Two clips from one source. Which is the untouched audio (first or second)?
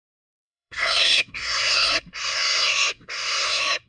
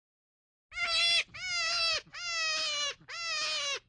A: second